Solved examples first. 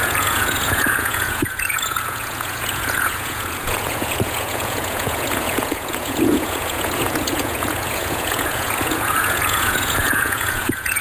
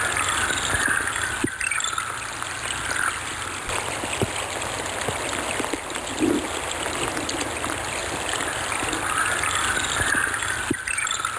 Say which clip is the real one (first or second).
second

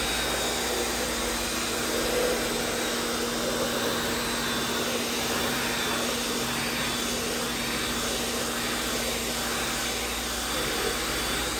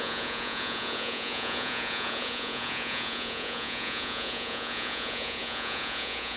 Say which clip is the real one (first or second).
first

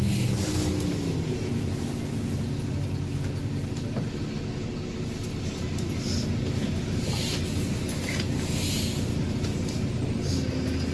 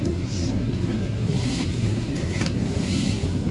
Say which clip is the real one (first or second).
first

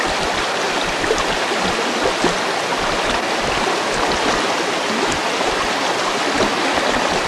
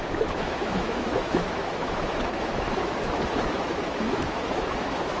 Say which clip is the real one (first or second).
first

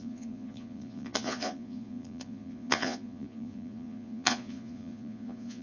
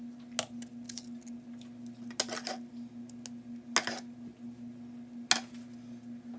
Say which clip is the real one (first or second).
second